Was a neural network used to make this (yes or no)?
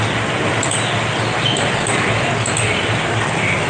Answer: no